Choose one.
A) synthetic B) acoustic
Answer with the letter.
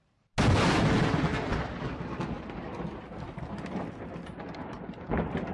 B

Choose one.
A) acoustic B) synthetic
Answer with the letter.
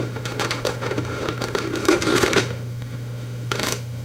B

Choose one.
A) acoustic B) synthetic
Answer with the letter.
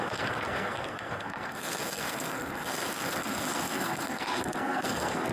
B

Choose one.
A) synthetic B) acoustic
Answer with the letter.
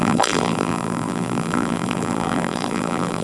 A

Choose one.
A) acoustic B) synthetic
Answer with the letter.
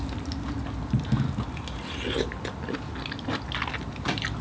A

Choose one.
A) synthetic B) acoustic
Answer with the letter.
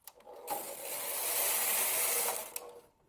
B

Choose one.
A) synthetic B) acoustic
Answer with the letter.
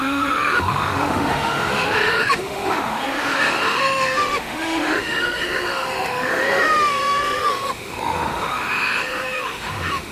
A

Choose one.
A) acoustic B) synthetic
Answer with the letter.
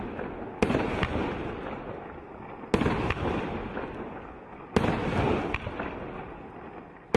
A